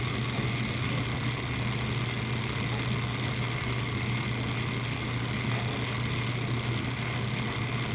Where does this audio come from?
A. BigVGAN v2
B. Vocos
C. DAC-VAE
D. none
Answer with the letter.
D